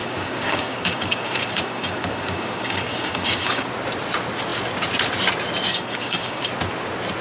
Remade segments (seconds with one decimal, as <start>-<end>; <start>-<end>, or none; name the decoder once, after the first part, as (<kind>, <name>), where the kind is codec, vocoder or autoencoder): 0.0-3.7 (codec, DAC); 5.7-6.5